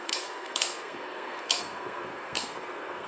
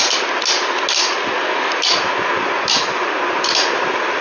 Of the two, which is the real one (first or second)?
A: second